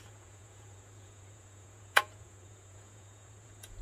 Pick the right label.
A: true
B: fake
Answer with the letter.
B